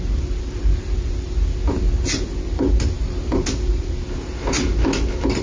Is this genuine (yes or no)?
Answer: yes